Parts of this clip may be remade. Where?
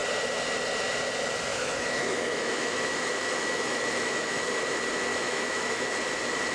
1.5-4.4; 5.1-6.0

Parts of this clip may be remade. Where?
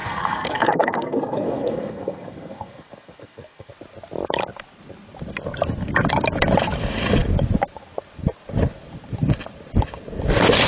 0.0-3.7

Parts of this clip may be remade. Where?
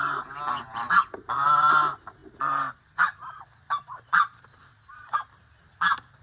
none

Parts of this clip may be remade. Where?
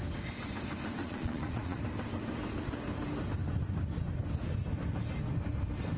1.0-1.8